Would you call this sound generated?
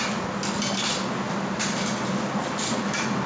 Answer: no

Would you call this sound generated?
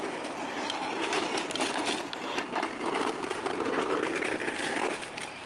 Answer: yes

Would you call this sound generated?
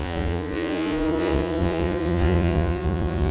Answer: yes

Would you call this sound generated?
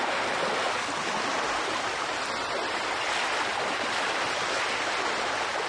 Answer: no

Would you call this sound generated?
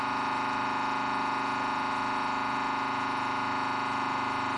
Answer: no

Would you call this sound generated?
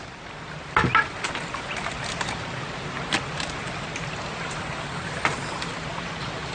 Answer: no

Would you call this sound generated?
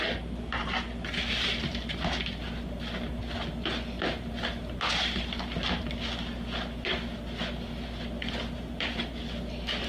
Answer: no